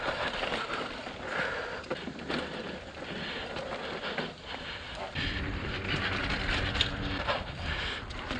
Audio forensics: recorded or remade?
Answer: remade